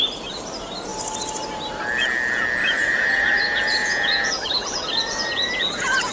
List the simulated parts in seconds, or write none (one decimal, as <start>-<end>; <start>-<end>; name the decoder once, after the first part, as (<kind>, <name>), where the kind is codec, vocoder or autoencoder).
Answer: 2.6-6.1 (vocoder, Vocos)